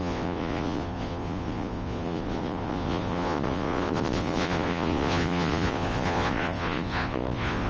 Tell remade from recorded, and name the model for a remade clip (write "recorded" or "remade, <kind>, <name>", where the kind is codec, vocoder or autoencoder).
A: remade, vocoder, Vocos